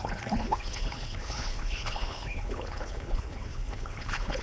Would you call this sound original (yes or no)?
no